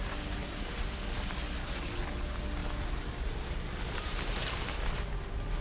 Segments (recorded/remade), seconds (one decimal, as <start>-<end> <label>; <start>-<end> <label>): 0.0-5.6 recorded